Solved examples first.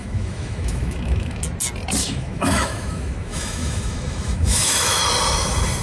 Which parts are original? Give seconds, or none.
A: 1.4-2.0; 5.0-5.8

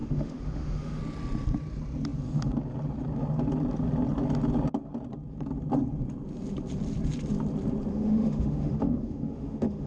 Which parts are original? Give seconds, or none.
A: 1.0-7.9

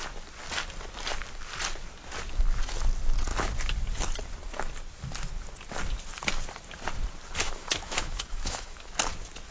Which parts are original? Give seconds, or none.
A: 0.0-7.4; 8.9-9.5

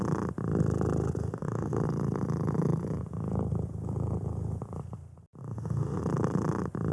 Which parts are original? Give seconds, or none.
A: 0.0-1.2; 1.8-5.4; 6.0-6.9

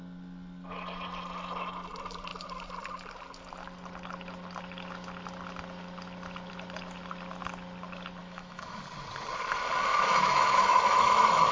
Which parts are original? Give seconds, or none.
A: 0.0-8.2; 8.8-9.9

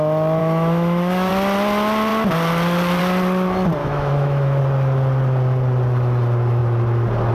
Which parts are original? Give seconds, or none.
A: 0.0-0.4; 1.3-3.8; 4.6-7.3

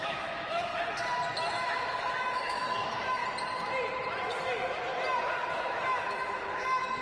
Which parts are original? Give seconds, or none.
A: 0.7-1.5; 3.2-5.5